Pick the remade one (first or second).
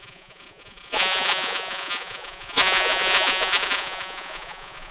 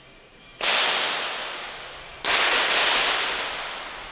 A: first